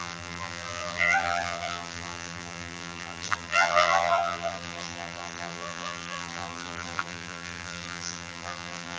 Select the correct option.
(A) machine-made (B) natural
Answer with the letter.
A